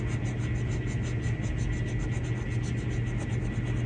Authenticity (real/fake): real